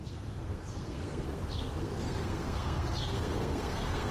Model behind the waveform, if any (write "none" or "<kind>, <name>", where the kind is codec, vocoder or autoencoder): codec, SNAC